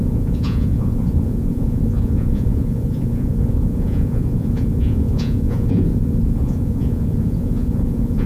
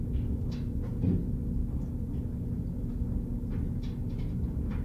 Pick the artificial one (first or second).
first